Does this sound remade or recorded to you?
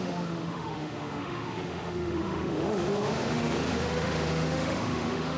remade